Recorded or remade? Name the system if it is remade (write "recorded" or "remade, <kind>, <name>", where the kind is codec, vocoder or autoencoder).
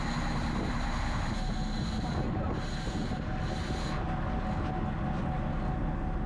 recorded